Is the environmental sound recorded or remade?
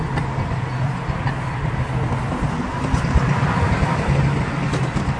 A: recorded